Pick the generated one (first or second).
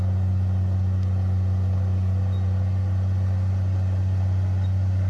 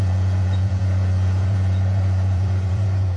second